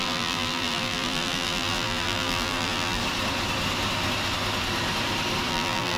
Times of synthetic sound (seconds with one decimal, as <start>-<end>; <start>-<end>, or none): 0.0-3.0; 5.5-6.0